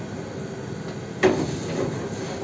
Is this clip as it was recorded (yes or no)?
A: yes